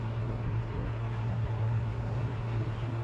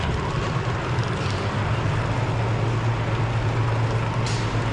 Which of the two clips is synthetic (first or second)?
first